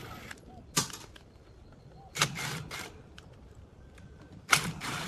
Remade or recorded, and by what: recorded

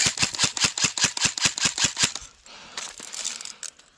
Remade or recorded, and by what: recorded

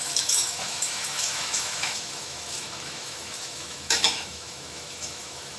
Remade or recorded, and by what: remade, autoencoder, DAC-VAE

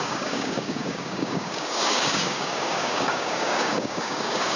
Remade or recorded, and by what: remade, codec, DAC